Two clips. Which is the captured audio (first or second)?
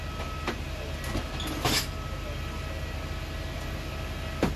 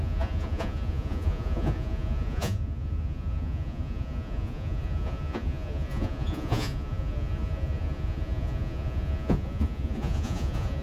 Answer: first